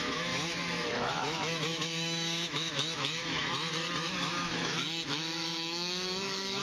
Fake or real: fake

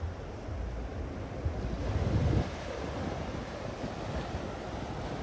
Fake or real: real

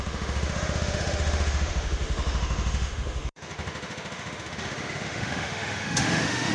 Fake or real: fake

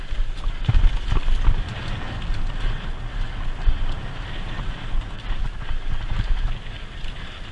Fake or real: real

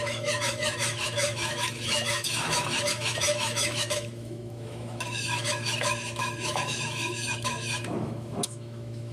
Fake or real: fake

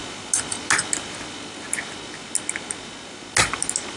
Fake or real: real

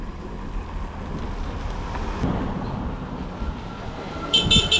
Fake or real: real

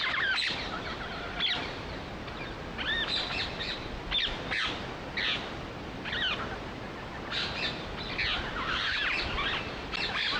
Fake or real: real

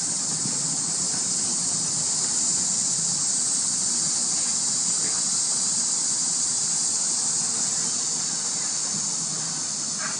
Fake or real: real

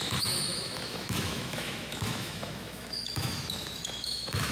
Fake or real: fake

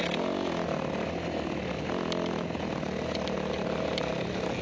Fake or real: real